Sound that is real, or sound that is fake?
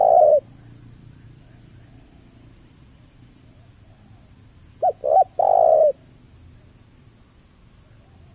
real